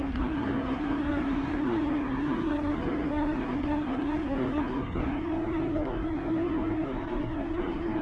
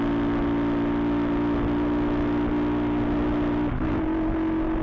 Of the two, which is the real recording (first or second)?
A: second